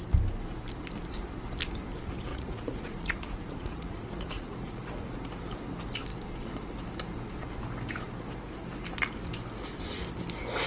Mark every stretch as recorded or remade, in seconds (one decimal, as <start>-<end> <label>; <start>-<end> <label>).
0.0-2.3 recorded; 2.3-4.9 remade; 4.9-10.7 recorded